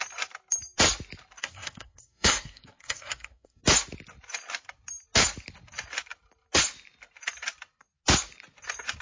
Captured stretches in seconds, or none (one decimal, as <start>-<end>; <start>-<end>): 0.0-1.4; 3.6-9.0